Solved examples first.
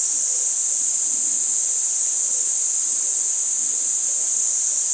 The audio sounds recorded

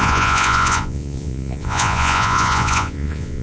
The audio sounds remade